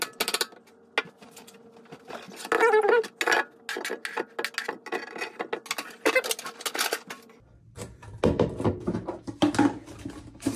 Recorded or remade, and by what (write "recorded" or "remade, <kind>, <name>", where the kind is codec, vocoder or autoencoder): recorded